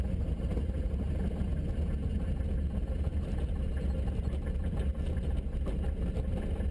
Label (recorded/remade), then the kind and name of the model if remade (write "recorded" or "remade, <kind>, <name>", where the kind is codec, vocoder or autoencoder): recorded